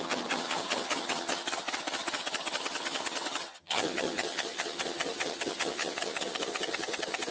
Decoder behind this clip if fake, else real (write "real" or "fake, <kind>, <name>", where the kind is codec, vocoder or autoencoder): fake, vocoder, HiFi-GAN